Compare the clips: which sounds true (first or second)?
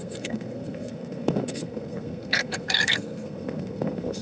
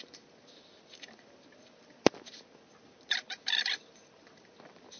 second